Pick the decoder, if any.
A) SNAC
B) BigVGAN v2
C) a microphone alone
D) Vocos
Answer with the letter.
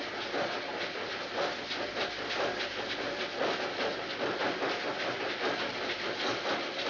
C